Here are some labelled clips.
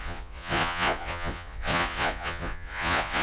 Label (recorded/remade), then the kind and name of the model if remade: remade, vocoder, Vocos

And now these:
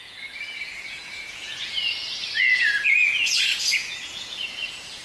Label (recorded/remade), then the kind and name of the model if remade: remade, vocoder, Vocos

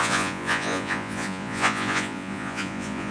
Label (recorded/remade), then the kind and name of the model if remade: remade, vocoder, Vocos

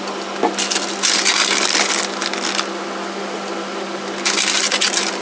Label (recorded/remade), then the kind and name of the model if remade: recorded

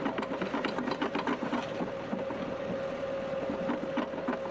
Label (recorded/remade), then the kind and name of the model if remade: recorded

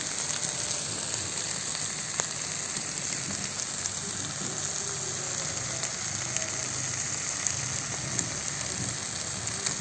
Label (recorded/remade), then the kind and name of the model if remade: recorded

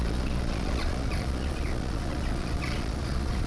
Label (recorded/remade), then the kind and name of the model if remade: remade, vocoder, Vocos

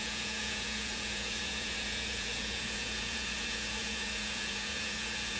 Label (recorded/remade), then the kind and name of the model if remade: remade, vocoder, Vocos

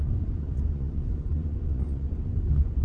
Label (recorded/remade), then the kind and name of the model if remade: remade, vocoder, Vocos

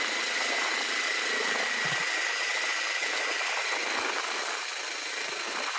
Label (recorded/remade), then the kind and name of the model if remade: recorded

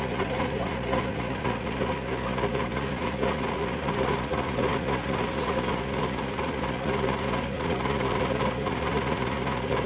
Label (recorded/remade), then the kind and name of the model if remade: remade, vocoder, Vocos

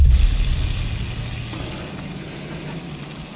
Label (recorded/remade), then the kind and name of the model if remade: recorded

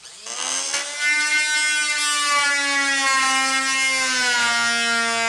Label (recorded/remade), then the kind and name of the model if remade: recorded